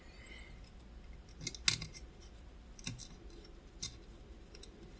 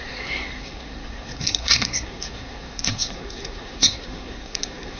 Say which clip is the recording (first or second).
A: first